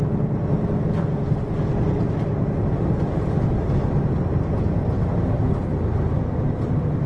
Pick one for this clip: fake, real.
real